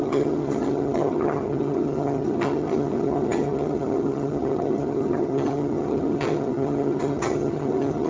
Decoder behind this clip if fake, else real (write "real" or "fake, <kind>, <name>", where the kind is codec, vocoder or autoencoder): fake, vocoder, HiFi-GAN